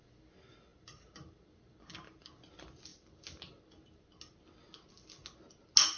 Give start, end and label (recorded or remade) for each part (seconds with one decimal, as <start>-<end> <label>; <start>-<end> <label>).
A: 0.0-0.7 recorded; 0.7-2.4 remade; 2.4-2.9 recorded; 2.9-3.6 remade; 3.6-6.0 recorded